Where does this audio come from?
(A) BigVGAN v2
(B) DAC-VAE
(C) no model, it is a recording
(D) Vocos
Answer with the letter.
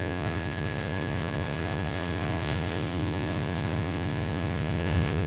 D